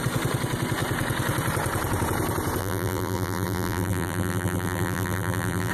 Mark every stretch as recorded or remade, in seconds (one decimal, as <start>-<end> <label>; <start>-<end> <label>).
0.0-2.6 recorded; 2.6-5.7 remade